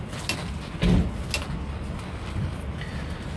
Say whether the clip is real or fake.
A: real